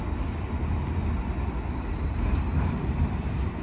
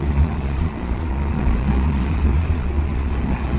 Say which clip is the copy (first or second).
second